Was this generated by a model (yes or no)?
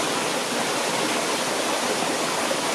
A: no